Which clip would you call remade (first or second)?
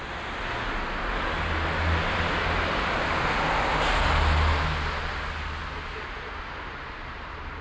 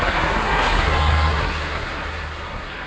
second